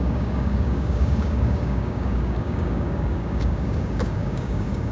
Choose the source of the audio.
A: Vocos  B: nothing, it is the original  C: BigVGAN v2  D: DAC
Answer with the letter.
D